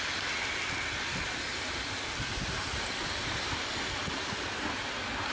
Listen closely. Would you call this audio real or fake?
real